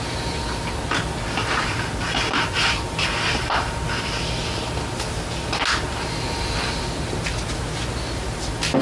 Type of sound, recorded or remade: recorded